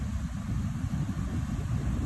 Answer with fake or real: real